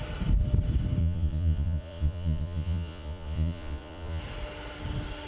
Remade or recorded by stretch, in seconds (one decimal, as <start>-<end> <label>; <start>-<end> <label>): 0.0-1.0 recorded; 1.0-4.2 remade; 4.2-5.3 recorded

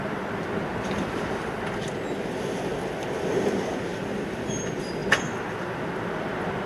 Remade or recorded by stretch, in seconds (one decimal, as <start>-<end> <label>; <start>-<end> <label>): 0.0-0.7 recorded; 0.7-1.4 remade; 1.4-3.9 recorded; 3.9-4.5 remade; 4.5-5.0 recorded; 5.0-5.8 remade; 5.8-6.7 recorded

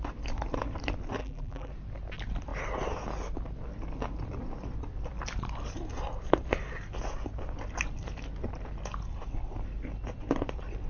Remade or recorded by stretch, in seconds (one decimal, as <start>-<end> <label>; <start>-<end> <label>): 0.0-1.2 recorded; 1.2-1.7 remade; 1.7-10.9 recorded

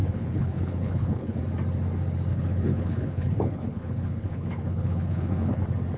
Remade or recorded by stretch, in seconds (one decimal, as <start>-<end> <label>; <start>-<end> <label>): 0.0-1.4 remade; 1.4-2.3 recorded; 2.3-5.6 remade; 5.6-6.0 recorded

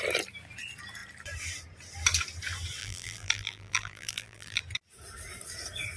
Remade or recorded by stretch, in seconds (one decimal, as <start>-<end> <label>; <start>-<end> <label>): 0.0-2.8 recorded; 2.8-4.6 remade; 4.6-6.0 recorded

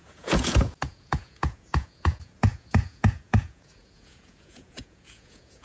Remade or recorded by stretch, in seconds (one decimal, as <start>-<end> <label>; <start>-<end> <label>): 0.0-5.6 remade